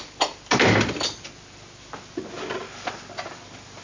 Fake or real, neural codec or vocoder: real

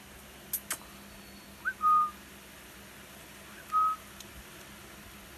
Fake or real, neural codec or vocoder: real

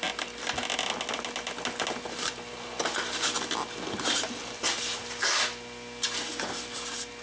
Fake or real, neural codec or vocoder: real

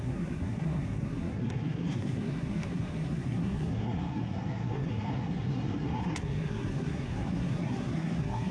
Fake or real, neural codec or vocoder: fake, codec, SNAC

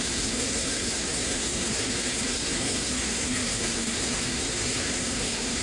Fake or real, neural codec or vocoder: fake, codec, SNAC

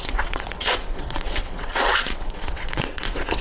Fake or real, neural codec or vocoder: fake, vocoder, WaveNeXt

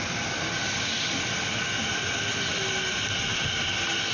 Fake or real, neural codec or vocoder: real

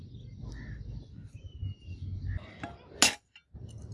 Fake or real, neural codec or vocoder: real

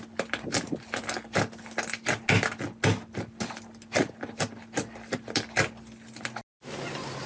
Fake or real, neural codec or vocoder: real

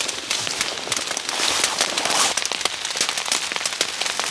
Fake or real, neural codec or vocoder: real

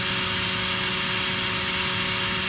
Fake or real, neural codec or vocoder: real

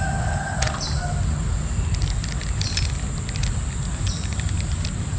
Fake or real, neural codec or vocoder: real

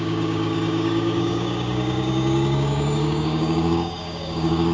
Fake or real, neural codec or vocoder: fake, codec, DAC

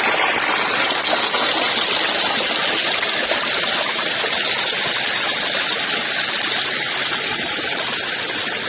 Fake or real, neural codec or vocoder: real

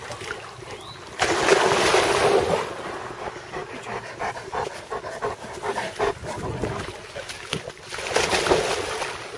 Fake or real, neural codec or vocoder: real